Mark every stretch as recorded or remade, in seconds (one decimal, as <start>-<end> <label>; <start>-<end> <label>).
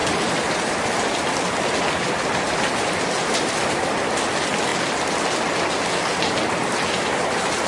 0.0-3.7 remade; 3.7-7.7 recorded